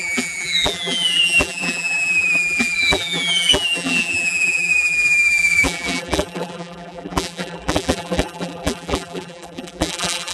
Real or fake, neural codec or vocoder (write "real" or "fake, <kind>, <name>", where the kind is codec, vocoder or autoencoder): fake, vocoder, BigVGAN v2